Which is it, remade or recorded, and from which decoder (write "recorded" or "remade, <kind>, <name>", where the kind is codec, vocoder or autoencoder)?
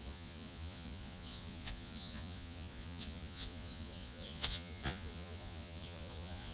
remade, vocoder, Vocos